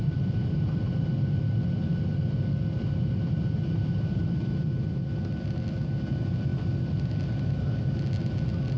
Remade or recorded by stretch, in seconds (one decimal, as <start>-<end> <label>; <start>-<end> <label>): 0.0-8.8 recorded